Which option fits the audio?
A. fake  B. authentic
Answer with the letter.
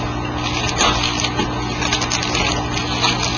B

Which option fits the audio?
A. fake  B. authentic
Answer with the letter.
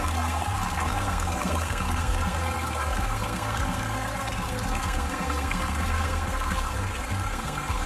A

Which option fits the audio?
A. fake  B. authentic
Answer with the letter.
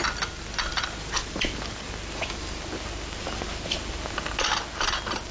B